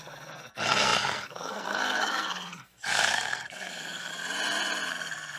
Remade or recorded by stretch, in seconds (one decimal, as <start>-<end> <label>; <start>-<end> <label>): 0.0-4.1 remade; 4.1-4.9 recorded; 4.9-5.4 remade